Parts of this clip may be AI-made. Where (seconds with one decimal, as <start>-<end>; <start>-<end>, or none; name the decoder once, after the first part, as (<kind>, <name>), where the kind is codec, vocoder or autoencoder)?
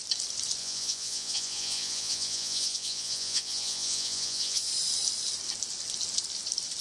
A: 0.6-4.7 (vocoder, Vocos)